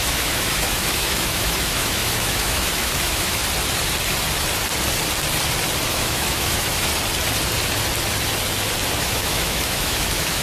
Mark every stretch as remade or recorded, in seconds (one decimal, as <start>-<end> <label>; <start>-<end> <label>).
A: 0.0-3.4 remade; 3.4-5.9 recorded; 5.9-6.9 remade; 6.9-9.0 recorded; 9.0-10.4 remade